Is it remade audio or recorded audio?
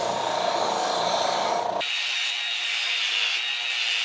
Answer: remade